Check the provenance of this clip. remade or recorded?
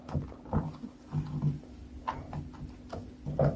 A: recorded